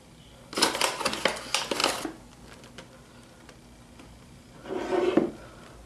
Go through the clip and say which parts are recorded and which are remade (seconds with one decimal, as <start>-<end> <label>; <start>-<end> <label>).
0.0-5.9 recorded

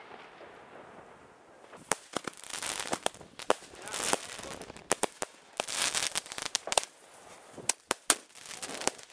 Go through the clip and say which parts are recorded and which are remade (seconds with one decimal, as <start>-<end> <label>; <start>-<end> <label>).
0.0-9.1 recorded

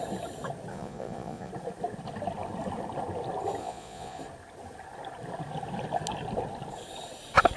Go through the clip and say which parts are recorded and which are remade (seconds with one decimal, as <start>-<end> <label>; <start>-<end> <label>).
0.0-0.7 recorded; 0.7-1.5 remade; 1.5-3.6 recorded; 3.6-4.2 remade; 4.2-7.6 recorded

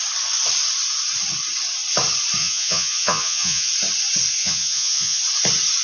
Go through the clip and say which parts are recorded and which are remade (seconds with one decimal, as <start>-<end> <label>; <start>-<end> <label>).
0.0-2.4 recorded; 2.4-3.7 remade; 3.7-4.4 recorded; 4.4-5.2 remade; 5.2-5.8 recorded

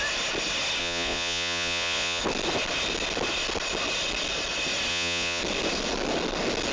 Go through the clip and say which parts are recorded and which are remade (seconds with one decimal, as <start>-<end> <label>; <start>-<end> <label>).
0.0-0.8 recorded; 0.8-2.2 remade; 2.2-4.9 recorded; 4.9-5.4 remade; 5.4-6.7 recorded

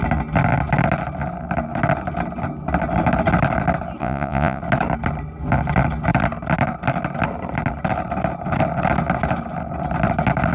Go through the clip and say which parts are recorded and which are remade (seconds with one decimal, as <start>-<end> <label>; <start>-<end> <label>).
0.0-4.0 recorded; 4.0-4.6 remade; 4.6-10.5 recorded

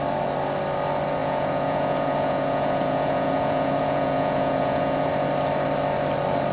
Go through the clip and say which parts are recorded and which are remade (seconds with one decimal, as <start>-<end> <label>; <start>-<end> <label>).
0.0-1.2 recorded; 1.2-5.1 remade; 5.1-6.5 recorded

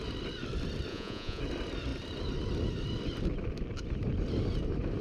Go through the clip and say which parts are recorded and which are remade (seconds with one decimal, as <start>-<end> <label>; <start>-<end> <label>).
0.0-0.9 recorded; 0.9-1.4 remade; 1.4-5.0 recorded